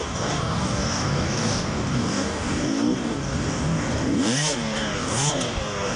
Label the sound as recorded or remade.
remade